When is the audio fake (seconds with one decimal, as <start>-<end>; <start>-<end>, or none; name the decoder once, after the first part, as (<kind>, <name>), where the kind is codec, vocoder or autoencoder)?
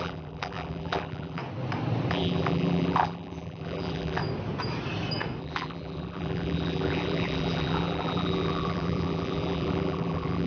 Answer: 0.0-1.4 (vocoder, BigVGAN v2); 2.1-4.2; 5.4-10.5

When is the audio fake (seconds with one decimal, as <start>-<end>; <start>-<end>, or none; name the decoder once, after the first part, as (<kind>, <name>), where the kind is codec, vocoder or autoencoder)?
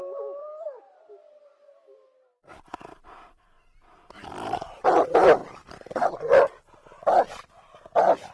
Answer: 0.4-1.1 (vocoder, BigVGAN v2); 5.4-5.9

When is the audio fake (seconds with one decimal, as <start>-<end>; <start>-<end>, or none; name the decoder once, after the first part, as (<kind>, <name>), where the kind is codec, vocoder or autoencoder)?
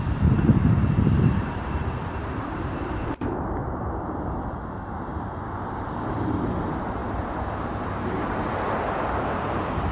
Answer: 0.0-0.6 (vocoder, BigVGAN v2); 1.1-9.9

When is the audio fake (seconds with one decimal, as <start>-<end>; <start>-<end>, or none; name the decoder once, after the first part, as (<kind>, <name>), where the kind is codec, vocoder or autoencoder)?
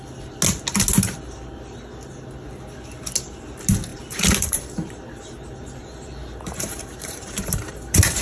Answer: 3.9-8.2 (vocoder, BigVGAN v2)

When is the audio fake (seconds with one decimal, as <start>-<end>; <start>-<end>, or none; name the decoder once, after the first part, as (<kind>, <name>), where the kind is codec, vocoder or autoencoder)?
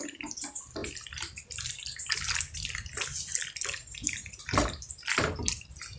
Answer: none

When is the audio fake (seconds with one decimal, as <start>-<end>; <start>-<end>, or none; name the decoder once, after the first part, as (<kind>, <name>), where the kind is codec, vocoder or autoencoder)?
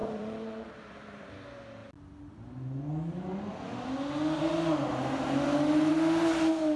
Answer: 0.0-1.3 (vocoder, BigVGAN v2)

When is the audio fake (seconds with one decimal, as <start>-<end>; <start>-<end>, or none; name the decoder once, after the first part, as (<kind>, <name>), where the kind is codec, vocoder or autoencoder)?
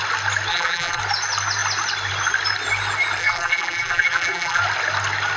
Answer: 0.5-1.0 (vocoder, BigVGAN v2); 3.2-4.6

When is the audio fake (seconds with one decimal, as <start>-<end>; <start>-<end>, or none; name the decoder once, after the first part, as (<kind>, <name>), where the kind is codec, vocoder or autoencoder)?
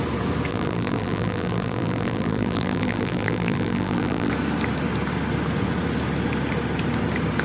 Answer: 0.5-4.3 (vocoder, BigVGAN v2)